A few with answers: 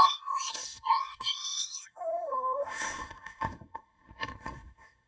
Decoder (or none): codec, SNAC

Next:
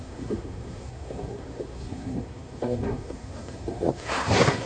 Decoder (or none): codec, SNAC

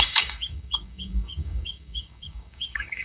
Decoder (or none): codec, DAC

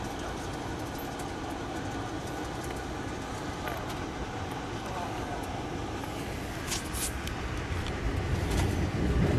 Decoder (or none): none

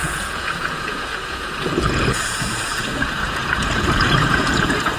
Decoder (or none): vocoder, Vocos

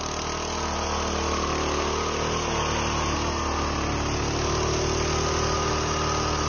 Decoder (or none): none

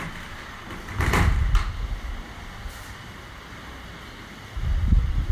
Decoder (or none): vocoder, BigVGAN v2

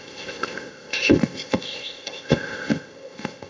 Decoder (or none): codec, ZipCodec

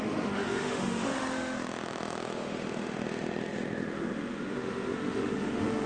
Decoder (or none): autoencoder, DAC-VAE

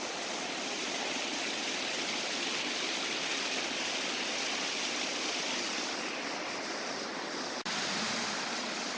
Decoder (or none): none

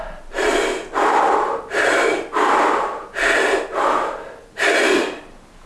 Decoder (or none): none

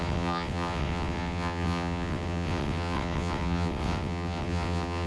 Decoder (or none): vocoder, WaveNeXt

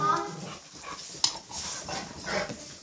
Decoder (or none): none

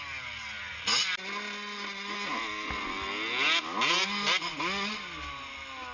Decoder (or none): none